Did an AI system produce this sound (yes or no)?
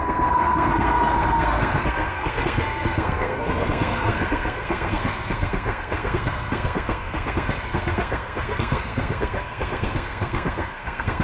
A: yes